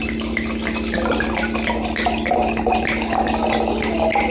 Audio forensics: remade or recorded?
recorded